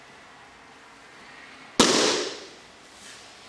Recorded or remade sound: recorded